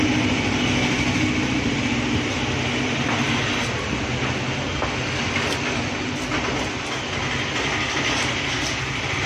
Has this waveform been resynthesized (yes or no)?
no